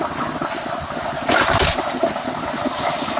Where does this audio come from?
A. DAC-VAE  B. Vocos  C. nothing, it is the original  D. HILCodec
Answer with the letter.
C